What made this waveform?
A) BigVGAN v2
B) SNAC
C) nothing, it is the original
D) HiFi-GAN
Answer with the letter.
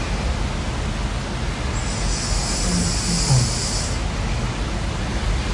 C